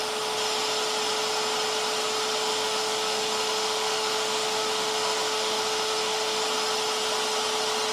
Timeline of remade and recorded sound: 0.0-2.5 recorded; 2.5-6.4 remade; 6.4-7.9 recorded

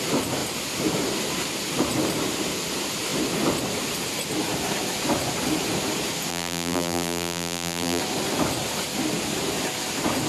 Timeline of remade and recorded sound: 0.0-6.3 recorded; 6.3-8.0 remade; 8.0-10.3 recorded

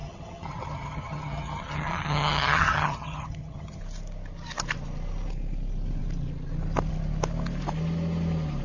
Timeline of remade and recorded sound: 0.0-3.8 remade; 3.8-8.6 recorded

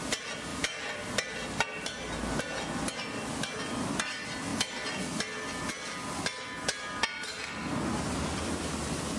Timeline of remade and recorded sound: 0.0-9.2 recorded